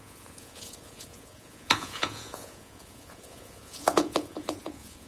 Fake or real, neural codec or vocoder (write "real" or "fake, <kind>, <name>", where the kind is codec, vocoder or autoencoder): fake, vocoder, Vocos